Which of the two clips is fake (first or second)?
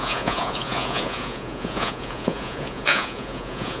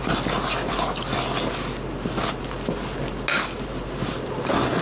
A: first